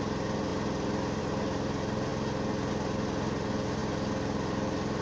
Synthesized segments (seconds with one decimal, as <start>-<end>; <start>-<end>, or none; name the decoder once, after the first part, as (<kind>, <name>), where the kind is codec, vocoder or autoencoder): none